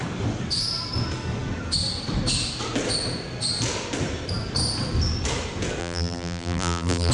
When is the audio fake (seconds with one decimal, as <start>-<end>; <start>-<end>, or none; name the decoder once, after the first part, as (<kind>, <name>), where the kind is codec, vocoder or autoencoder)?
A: 5.8-7.1 (vocoder, BigVGAN v2)